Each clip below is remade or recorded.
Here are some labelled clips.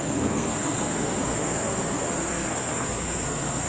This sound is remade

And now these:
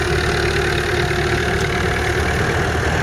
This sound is recorded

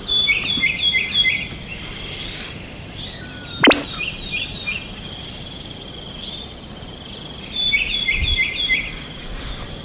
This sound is recorded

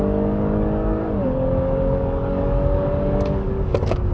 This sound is remade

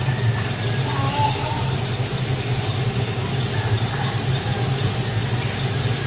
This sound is recorded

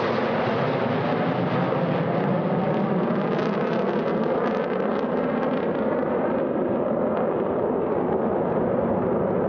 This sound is recorded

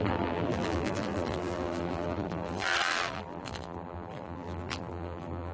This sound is remade